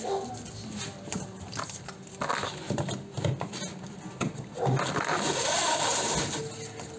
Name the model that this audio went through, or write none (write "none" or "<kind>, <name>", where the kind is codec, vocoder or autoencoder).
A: none